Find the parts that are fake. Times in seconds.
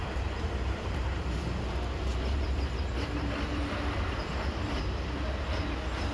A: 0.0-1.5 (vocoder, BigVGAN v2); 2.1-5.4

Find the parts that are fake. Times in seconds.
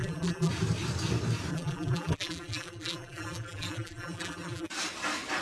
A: 0.0-0.5 (vocoder, BigVGAN v2); 1.5-4.7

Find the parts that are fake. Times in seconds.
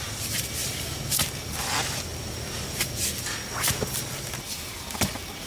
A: 0.0-2.1 (vocoder, BigVGAN v2); 2.8-5.5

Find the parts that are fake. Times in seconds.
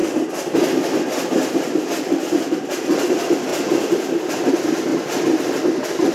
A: 1.9-4.9 (vocoder, BigVGAN v2); 5.5-6.1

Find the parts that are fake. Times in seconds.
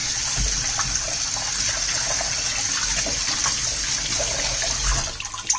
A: none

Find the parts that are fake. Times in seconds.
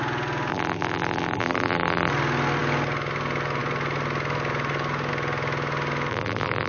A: 0.5-2.1 (vocoder, BigVGAN v2); 6.1-6.7